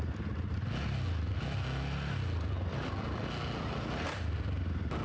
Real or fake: real